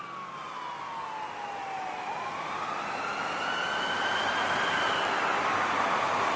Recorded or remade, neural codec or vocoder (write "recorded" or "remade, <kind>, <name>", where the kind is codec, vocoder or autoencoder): recorded